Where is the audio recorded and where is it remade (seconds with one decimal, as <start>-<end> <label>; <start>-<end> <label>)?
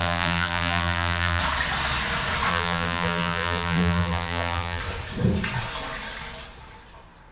0.0-1.4 remade; 1.4-2.5 recorded; 2.5-4.8 remade; 4.8-7.3 recorded